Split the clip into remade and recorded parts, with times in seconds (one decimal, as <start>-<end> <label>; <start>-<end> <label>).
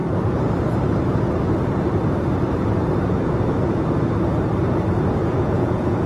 0.0-5.2 recorded; 5.2-6.1 remade